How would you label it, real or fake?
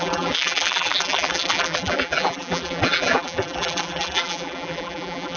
fake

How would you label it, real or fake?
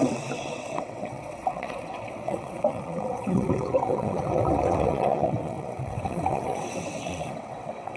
fake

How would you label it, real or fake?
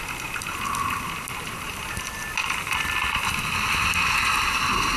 real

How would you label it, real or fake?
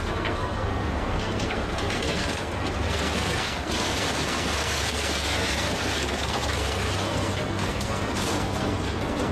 fake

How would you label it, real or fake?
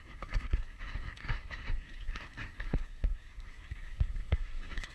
fake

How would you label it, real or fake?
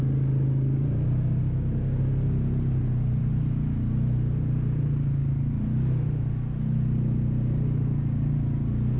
real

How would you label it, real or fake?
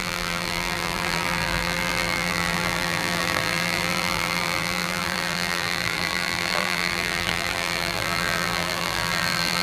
fake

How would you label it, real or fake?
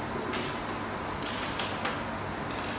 real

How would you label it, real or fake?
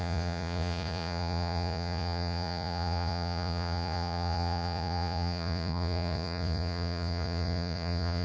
fake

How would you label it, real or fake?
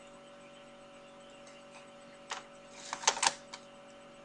real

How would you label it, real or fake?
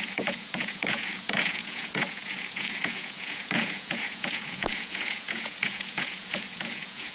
fake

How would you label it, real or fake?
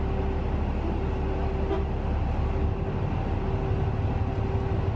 real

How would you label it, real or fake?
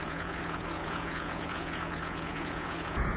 fake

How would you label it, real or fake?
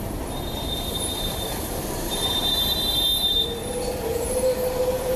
fake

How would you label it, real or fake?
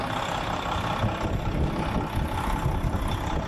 real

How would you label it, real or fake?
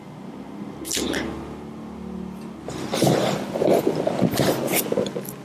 real